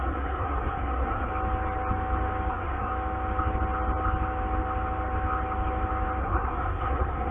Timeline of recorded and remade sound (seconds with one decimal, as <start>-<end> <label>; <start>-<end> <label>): 0.0-1.3 remade; 1.3-2.5 recorded; 2.5-2.9 remade; 2.9-6.2 recorded; 6.2-7.3 remade